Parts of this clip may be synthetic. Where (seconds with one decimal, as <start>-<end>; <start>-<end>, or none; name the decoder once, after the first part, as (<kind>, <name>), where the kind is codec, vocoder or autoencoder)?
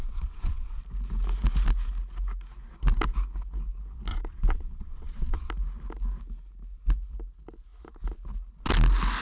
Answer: 0.0-0.8 (vocoder, WaveNeXt); 4.1-5.5